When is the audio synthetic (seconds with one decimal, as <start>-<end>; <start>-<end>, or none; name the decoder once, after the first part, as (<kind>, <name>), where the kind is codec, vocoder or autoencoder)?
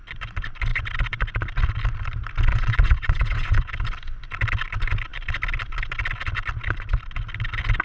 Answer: 2.5-3.7 (vocoder, WaveNeXt)